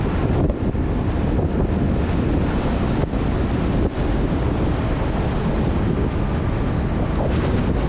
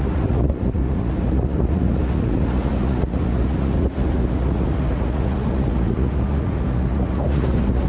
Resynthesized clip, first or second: second